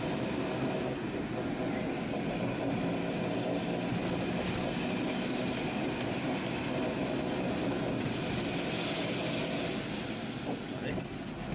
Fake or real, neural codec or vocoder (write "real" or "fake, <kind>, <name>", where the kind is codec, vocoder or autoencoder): real